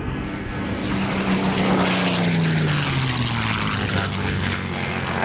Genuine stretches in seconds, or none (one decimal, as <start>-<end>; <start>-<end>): 0.8-3.9